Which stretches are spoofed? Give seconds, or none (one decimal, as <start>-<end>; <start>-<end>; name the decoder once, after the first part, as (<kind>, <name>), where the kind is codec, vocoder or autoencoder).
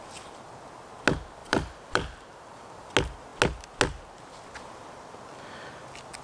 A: 1.4-2.9 (vocoder, BigVGAN v2)